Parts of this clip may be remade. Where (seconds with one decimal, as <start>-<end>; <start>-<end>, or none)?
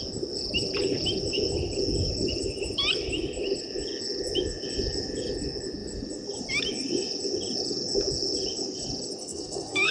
9.2-9.9